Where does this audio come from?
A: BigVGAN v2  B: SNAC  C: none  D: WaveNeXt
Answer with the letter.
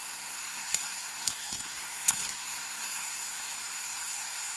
B